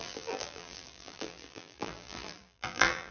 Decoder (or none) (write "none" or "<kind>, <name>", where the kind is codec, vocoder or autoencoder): vocoder, BigVGAN v2